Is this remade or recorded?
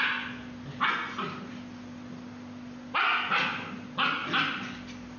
recorded